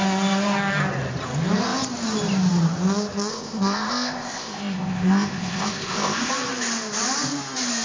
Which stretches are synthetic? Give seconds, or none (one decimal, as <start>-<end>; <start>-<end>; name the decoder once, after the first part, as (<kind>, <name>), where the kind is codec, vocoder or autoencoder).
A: 3.3-6.3 (codec, ZipCodec)